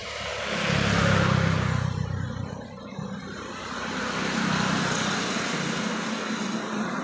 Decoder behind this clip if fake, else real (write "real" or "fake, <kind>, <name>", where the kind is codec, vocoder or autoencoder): real